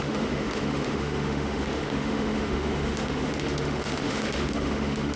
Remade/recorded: remade